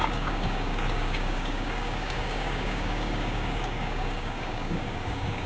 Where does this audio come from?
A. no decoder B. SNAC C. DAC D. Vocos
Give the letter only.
C